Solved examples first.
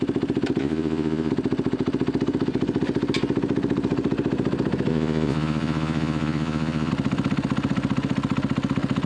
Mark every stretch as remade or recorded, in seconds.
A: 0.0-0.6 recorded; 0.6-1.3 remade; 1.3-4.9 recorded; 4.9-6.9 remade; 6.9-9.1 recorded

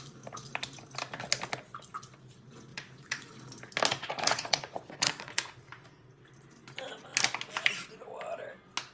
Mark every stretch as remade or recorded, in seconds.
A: 0.0-2.7 recorded; 2.7-3.3 remade; 3.3-3.9 recorded; 3.9-5.7 remade; 5.7-8.9 recorded

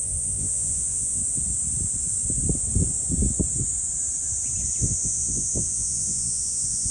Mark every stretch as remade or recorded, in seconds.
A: 0.0-1.2 remade; 1.2-4.8 recorded; 4.8-6.9 remade

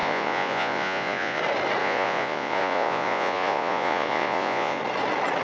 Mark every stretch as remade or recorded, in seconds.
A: 0.0-1.4 remade; 1.4-1.8 recorded; 1.8-4.8 remade; 4.8-5.4 recorded

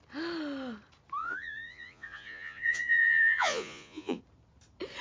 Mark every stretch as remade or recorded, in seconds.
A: 0.0-1.2 recorded; 1.2-4.2 remade; 4.2-5.0 recorded